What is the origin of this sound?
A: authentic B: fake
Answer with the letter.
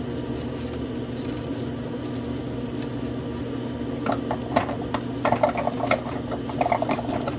A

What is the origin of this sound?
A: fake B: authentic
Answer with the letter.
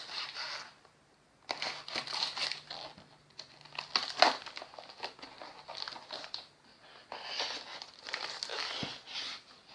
B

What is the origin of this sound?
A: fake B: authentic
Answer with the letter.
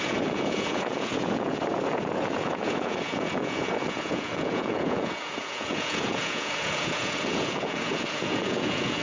A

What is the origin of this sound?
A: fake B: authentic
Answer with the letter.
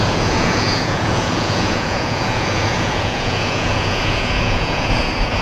A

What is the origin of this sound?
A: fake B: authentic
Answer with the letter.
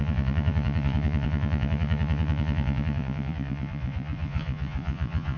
A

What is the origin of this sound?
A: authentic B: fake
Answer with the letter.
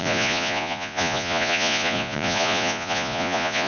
B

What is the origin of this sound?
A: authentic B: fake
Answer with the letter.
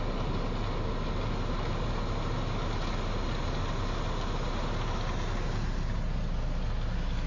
A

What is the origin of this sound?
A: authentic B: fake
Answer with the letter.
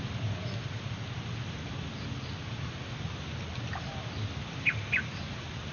A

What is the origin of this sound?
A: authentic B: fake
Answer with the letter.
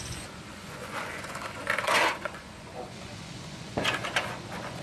B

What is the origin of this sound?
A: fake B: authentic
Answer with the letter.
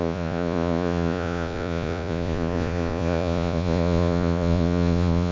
A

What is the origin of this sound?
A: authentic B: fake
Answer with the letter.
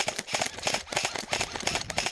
A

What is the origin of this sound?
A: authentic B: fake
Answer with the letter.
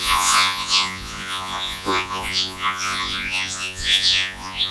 B